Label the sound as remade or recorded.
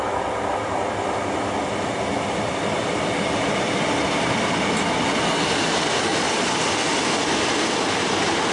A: recorded